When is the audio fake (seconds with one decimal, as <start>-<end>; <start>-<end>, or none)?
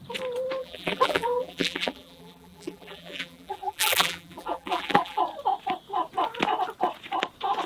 0.6-5.2